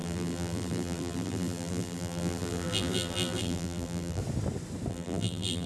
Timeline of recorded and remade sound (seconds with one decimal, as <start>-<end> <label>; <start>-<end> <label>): 0.0-4.2 remade; 4.2-4.9 recorded; 4.9-5.7 remade